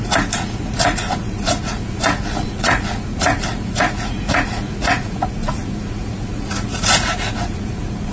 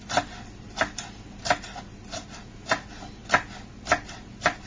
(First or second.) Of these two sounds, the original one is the second